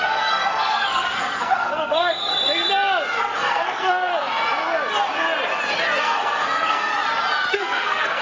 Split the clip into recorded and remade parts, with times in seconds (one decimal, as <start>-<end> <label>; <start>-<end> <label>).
0.0-2.3 remade; 2.3-3.2 recorded; 3.2-4.1 remade; 4.1-6.0 recorded; 6.0-6.9 remade; 6.9-7.5 recorded; 7.5-8.2 remade